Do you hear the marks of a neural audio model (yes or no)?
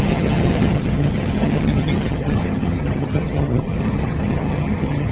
yes